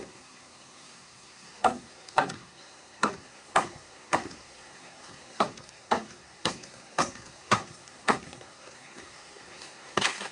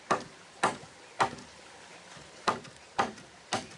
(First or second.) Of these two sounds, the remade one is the first